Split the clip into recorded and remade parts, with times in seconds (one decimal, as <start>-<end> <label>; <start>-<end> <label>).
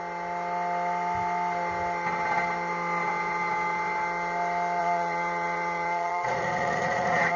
0.0-4.8 recorded; 4.8-7.4 remade